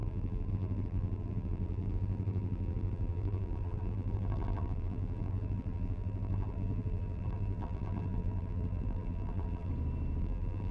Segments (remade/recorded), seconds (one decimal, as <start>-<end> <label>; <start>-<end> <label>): 0.0-9.7 remade; 9.7-10.2 recorded; 10.2-10.7 remade